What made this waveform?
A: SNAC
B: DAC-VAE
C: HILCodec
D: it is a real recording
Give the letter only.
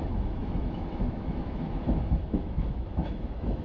B